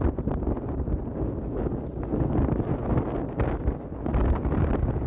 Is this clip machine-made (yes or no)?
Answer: no